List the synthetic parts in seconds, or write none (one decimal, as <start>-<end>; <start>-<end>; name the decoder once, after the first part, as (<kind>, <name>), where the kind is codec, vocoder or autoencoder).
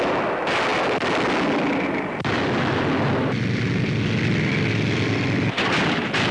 none